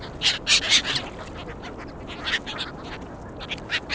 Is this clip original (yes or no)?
yes